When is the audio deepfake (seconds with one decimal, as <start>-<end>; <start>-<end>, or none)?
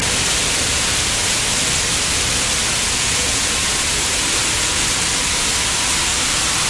0.7-1.4; 2.8-4.2